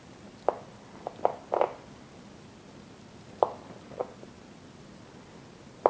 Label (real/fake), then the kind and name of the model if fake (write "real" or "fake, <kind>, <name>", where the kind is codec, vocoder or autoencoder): real